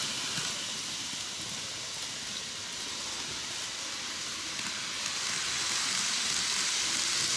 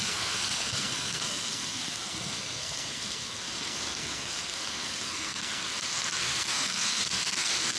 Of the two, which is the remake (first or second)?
second